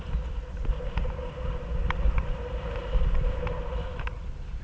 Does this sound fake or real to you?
real